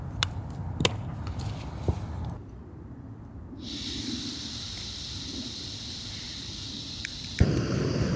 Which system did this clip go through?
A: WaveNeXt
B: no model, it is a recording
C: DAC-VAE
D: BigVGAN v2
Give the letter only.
D